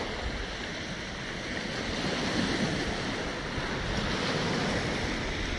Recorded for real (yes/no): yes